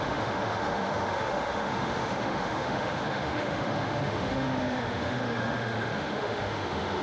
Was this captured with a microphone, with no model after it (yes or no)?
no